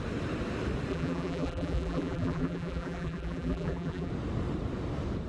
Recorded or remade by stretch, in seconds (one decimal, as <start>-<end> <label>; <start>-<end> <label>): 0.0-0.9 recorded; 0.9-4.1 remade; 4.1-5.3 recorded